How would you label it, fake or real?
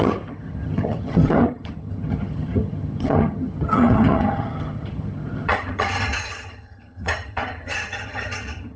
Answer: fake